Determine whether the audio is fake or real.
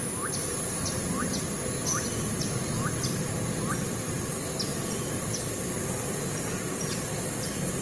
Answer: real